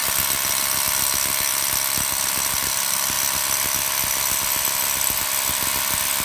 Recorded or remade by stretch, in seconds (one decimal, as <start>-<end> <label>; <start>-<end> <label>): 0.0-6.2 recorded